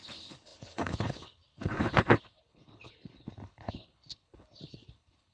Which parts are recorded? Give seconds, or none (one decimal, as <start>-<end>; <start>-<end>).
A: none